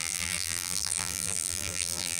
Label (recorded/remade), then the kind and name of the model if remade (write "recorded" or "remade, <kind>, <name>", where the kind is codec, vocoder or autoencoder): remade, vocoder, BigVGAN v2